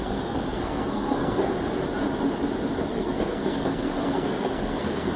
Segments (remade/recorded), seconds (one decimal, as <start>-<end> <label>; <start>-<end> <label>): 0.0-1.5 remade; 1.5-2.9 recorded; 2.9-5.2 remade

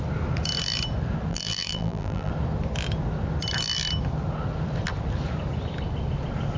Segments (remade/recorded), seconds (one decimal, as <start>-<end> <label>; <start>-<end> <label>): 0.0-1.3 recorded; 1.3-2.3 remade; 2.3-6.6 recorded